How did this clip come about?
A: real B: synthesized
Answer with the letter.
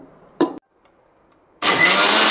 A